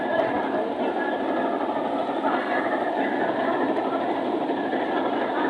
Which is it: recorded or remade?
recorded